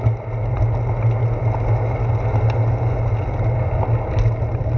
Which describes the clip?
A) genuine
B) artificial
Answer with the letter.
A